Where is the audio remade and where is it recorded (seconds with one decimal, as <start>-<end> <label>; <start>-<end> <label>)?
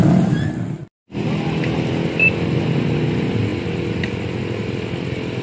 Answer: 0.0-0.8 recorded; 0.8-2.6 remade; 2.6-3.5 recorded; 3.5-4.4 remade; 4.4-5.4 recorded